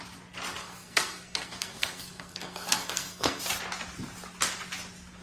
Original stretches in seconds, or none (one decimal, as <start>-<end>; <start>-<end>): 0.0-0.6; 3.4-5.2